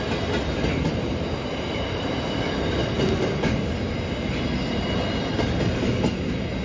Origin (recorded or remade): recorded